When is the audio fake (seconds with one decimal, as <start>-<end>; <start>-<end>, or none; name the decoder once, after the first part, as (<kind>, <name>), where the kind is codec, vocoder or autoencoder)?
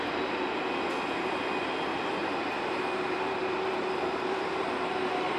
2.2-5.4 (vocoder, BigVGAN v2)